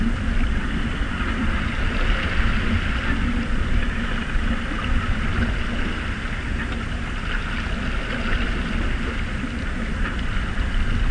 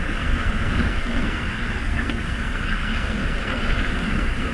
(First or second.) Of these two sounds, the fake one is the second